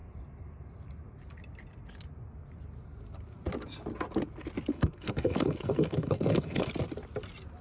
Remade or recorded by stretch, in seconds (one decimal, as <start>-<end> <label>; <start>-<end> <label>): 0.0-4.7 recorded; 4.7-6.7 remade; 6.7-7.6 recorded